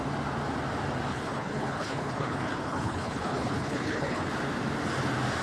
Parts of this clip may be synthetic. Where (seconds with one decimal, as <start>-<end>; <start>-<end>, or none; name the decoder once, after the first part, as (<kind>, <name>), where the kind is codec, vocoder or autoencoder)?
1.1-4.3 (codec, HILCodec)